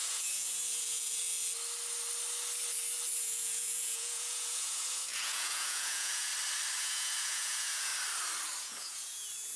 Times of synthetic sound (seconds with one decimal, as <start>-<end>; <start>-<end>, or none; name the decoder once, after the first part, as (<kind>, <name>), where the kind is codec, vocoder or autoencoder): 0.0-1.2 (vocoder, Vocos); 3.2-6.3; 6.8-7.9; 8.6-9.6

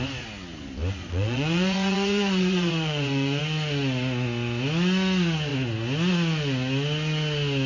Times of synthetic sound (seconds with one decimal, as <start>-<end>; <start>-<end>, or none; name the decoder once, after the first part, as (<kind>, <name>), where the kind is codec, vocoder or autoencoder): 1.0-3.4 (vocoder, Vocos)

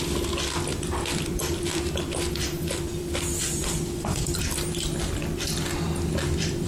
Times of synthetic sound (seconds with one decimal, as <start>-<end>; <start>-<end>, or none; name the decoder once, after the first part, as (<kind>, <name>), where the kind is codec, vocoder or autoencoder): 0.7-4.7 (vocoder, BigVGAN v2)

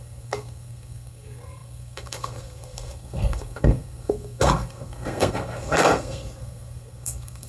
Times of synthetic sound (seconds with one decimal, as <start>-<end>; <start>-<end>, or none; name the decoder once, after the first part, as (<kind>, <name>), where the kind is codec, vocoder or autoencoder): 0.0-7.5 (codec, SNAC)

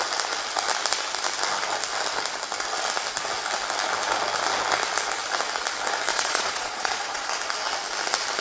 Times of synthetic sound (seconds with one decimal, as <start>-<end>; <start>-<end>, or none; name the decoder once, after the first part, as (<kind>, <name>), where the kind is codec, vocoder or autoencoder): 6.1-7.3 (vocoder, Vocos)

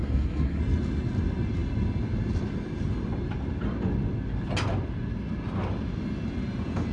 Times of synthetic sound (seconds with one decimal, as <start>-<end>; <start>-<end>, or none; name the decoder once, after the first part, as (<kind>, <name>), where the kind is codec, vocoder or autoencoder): 0.0-0.6 (codec, SNAC)